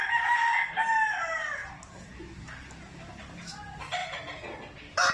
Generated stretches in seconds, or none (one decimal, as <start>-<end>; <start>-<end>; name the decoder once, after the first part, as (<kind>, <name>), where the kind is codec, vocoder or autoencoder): none